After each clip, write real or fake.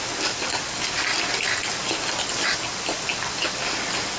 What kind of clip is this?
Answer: real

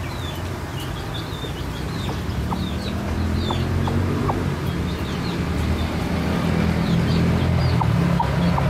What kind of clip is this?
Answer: real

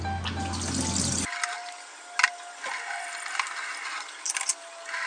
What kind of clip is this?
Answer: real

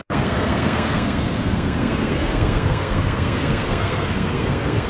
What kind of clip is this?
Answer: fake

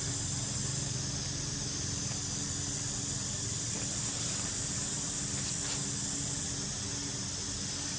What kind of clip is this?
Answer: real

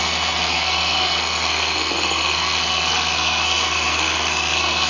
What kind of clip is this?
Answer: fake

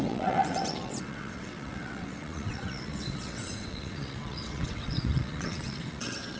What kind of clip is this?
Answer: fake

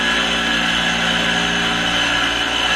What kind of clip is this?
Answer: real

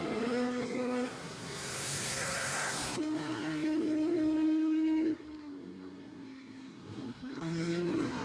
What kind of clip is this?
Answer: fake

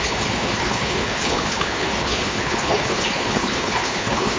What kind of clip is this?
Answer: fake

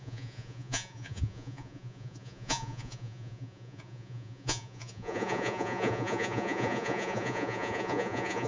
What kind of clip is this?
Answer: fake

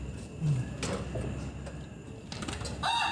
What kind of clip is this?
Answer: real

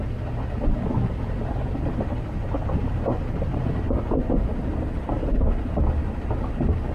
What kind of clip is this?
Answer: real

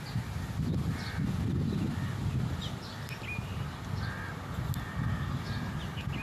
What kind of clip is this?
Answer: real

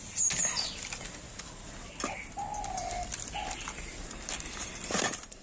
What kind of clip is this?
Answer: real